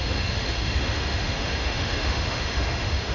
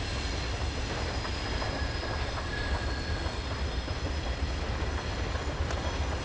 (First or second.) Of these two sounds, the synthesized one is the first